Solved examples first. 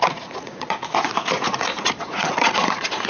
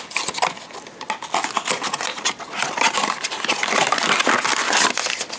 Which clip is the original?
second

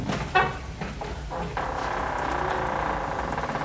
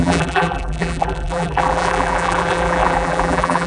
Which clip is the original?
first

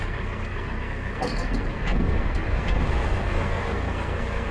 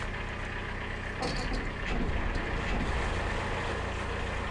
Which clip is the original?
second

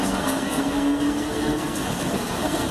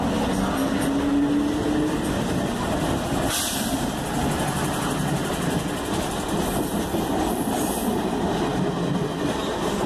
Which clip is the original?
second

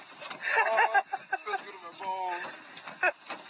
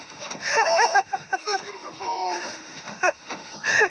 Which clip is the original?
first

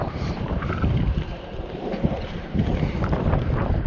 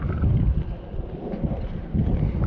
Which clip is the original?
second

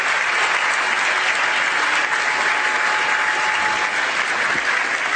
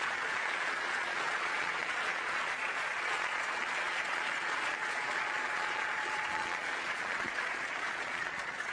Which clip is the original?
first